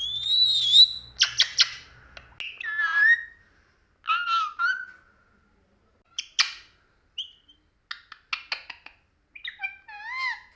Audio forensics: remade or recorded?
recorded